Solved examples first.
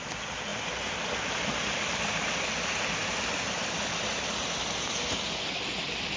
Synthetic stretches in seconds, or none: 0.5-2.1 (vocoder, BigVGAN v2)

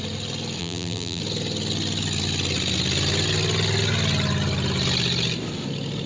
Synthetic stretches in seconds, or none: 0.6-1.2 (vocoder, BigVGAN v2)